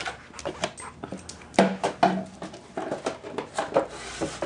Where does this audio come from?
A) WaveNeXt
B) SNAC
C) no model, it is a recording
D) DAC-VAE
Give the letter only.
C